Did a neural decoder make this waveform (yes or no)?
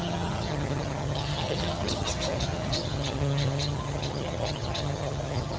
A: yes